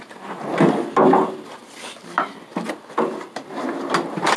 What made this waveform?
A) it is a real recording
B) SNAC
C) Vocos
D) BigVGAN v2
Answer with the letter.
A